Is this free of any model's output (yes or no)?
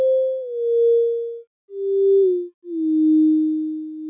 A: yes